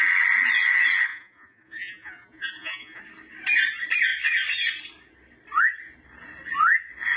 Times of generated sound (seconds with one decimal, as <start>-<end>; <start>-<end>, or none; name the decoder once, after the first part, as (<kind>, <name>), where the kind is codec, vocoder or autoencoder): 1.1-3.0 (vocoder, Vocos)